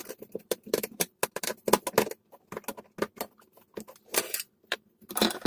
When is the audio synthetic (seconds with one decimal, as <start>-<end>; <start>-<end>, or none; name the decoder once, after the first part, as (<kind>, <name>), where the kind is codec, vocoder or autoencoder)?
0.0-1.8 (vocoder, BigVGAN v2); 4.1-5.5